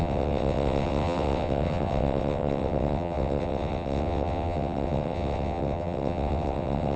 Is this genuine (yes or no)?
no